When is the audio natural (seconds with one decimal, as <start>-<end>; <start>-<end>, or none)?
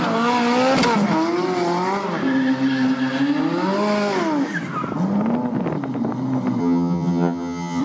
0.0-6.6